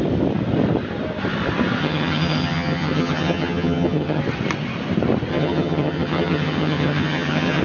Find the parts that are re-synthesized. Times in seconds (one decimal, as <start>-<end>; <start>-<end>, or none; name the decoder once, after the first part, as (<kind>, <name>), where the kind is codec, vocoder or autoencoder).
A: 1.8-4.2 (vocoder, HiFi-GAN); 5.3-7.6